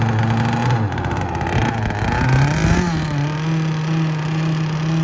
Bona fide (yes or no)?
yes